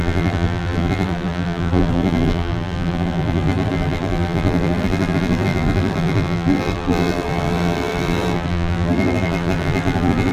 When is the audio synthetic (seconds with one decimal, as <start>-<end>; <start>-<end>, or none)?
0.0-10.3